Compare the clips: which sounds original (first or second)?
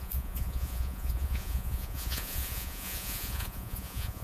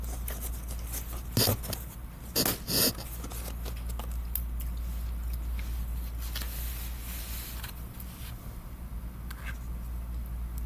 second